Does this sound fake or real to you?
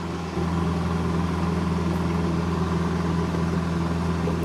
real